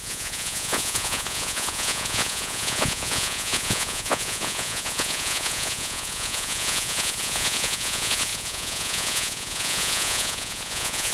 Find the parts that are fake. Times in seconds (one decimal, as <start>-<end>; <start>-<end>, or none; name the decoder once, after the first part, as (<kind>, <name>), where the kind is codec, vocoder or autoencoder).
0.0-11.1 (vocoder, Vocos)

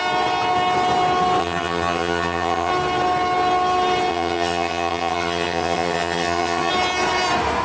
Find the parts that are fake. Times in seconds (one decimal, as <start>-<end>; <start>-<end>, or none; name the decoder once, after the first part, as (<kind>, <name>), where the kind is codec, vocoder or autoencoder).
1.4-2.7 (vocoder, HiFi-GAN); 4.1-6.7

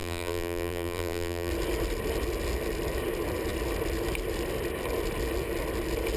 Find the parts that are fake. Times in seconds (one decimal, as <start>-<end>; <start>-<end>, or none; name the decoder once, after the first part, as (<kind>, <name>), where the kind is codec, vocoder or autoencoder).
0.0-1.5 (vocoder, BigVGAN v2)